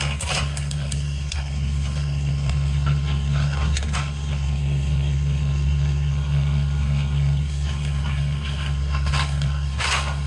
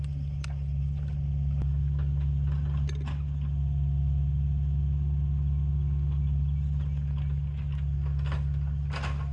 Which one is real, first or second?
second